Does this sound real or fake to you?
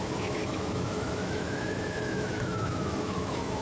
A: fake